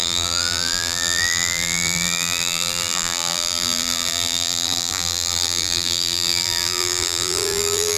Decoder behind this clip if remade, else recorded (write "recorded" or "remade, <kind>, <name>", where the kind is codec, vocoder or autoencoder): remade, vocoder, BigVGAN v2